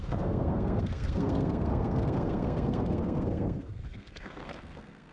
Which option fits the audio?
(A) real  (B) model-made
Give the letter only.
B